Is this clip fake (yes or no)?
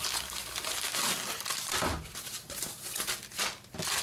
no